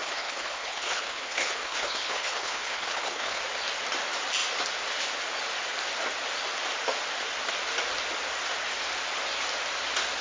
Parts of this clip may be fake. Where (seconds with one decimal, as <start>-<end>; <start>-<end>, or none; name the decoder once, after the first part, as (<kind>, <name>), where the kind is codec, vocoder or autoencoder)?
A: 0.0-3.4 (codec, HILCodec)